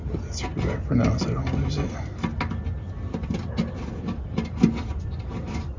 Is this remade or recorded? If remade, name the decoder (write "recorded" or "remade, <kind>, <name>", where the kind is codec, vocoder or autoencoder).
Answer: recorded